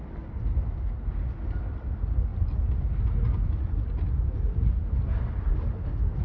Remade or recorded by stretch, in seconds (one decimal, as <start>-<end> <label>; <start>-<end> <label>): 0.0-6.2 recorded

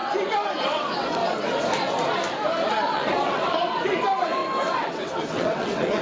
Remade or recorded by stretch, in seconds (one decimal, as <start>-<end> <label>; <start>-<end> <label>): 0.0-0.6 recorded; 0.6-1.2 remade; 1.2-2.7 recorded; 2.7-6.0 remade